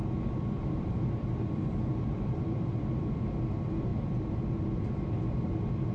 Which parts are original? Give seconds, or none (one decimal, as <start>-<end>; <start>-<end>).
3.2-3.9; 5.5-5.9